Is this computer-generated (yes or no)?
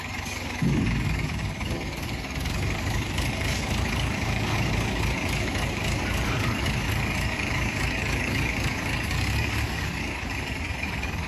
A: yes